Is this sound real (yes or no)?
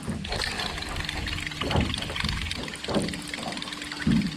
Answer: yes